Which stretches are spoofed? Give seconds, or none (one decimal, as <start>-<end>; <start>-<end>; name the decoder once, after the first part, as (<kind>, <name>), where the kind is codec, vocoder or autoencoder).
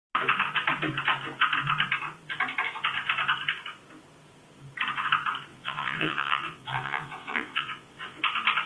5.5-8.2 (vocoder, WaveNeXt)